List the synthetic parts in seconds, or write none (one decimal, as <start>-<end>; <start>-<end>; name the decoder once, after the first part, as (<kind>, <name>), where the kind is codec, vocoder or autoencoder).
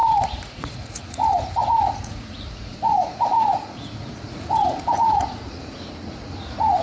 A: 0.0-6.8 (vocoder, Vocos)